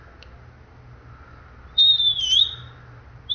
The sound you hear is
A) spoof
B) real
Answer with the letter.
B